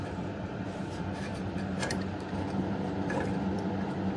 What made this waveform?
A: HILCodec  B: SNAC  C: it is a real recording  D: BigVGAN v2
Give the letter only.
D